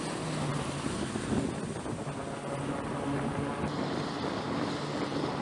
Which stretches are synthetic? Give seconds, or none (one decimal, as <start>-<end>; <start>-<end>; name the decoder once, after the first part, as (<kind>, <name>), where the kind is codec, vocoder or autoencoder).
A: none